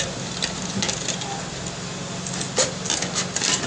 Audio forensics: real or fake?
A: real